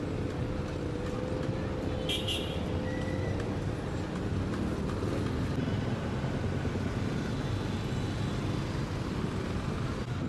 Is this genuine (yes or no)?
yes